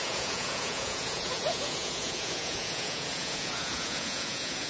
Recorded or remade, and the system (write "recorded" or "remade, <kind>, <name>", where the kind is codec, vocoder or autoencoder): remade, vocoder, Vocos